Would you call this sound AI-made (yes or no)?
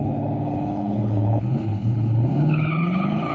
yes